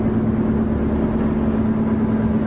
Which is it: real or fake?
real